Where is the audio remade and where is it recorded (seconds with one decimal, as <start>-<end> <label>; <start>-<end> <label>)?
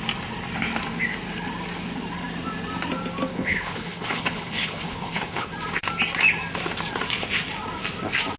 0.0-3.3 recorded; 3.3-5.5 remade; 5.5-8.4 recorded